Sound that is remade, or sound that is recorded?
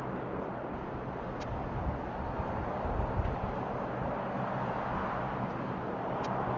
recorded